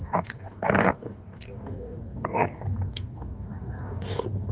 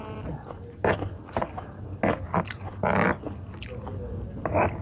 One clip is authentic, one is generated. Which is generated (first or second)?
first